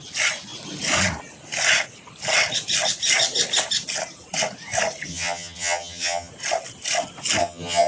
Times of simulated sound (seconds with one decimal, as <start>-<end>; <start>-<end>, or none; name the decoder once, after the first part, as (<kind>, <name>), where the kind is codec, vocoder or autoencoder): 5.1-6.3 (vocoder, HiFi-GAN); 7.4-7.9